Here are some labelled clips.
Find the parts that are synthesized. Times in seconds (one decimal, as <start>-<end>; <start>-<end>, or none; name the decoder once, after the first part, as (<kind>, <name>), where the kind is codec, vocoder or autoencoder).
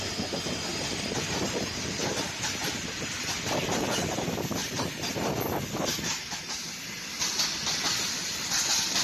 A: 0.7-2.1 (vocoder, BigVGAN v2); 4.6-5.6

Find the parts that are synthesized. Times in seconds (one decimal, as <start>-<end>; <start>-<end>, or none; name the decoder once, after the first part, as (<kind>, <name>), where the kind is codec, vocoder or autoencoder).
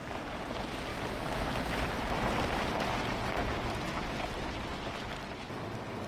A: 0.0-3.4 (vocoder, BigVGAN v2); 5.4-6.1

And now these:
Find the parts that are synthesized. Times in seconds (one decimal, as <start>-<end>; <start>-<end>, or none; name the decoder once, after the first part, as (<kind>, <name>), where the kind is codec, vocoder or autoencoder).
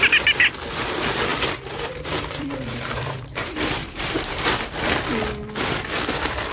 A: 1.3-5.2 (vocoder, BigVGAN v2)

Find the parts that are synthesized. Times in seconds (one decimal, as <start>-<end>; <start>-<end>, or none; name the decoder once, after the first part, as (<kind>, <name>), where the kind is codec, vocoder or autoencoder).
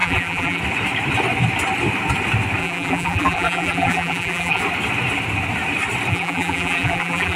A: 0.0-0.6 (vocoder, BigVGAN v2); 2.6-4.6; 6.1-7.4